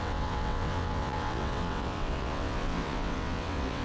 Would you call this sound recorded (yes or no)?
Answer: no